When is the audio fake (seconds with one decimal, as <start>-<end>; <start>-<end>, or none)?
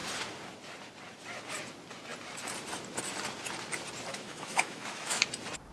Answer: 4.1-5.2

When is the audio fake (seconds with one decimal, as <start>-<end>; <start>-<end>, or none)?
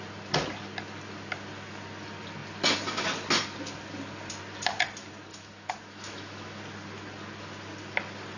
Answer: 5.3-6.6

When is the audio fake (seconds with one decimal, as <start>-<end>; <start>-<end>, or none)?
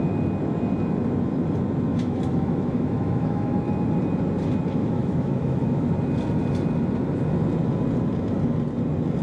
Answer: 1.9-3.6; 4.8-5.9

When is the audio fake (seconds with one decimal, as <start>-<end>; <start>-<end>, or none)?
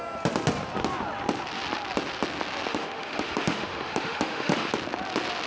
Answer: 2.7-4.7